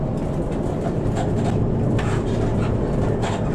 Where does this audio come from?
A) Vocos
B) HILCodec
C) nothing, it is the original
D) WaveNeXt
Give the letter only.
C